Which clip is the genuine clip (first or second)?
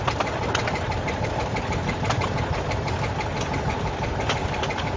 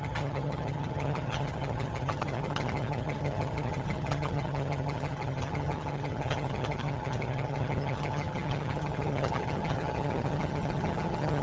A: first